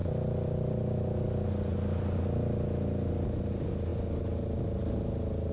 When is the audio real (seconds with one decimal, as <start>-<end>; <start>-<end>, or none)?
0.0-5.5

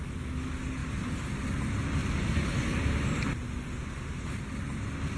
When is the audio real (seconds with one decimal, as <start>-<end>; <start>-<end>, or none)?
0.0-5.2

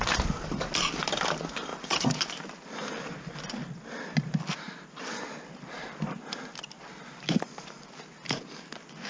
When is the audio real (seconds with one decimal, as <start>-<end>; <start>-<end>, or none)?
0.0-1.7; 2.2-9.1

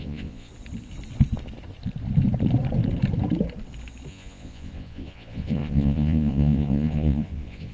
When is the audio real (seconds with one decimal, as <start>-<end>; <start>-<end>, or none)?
0.5-4.1

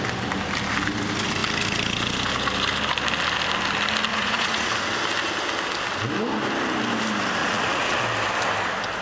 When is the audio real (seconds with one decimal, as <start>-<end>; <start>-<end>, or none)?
0.0-4.1; 4.7-7.4; 8.0-9.0